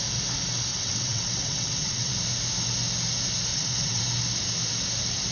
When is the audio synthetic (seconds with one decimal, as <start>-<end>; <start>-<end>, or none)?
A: 0.7-2.1; 3.5-4.0